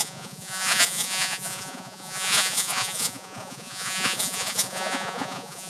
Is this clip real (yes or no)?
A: no